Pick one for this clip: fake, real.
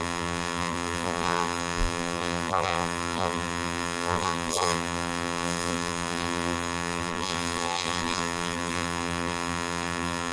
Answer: fake